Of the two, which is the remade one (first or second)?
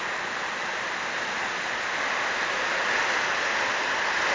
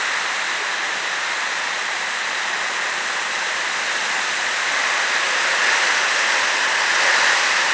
second